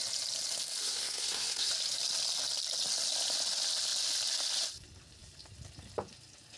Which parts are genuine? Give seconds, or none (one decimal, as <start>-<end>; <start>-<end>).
0.0-0.8; 1.7-6.6